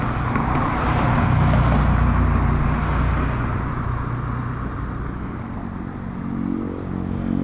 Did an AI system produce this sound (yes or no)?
no